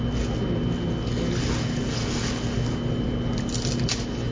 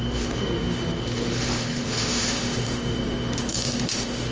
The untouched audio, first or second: first